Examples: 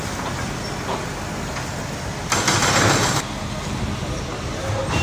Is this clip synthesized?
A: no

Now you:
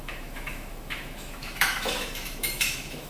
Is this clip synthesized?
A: yes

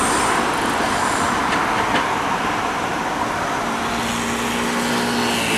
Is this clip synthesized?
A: no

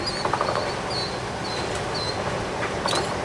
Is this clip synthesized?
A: no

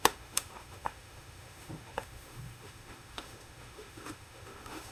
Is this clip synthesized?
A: yes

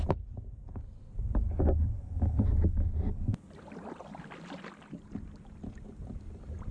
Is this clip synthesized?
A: no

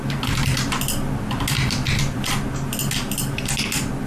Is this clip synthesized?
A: no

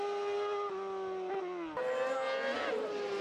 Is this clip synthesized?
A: no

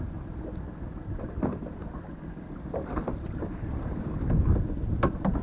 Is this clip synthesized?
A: no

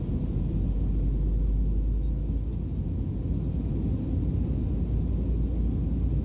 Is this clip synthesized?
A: no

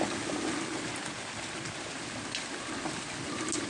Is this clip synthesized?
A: no